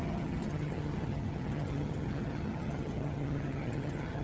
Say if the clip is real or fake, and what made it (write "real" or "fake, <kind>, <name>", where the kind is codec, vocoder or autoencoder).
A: fake, vocoder, HiFi-GAN